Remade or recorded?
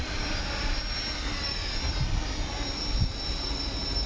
recorded